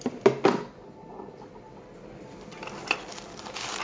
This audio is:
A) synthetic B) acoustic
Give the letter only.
B